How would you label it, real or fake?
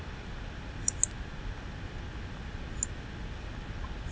real